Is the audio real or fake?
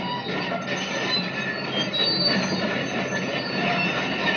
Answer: real